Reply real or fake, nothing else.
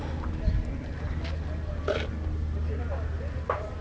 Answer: real